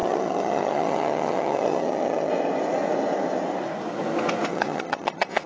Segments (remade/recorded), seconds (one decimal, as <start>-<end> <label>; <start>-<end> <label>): 0.0-2.3 remade; 2.3-4.5 recorded; 4.5-5.5 remade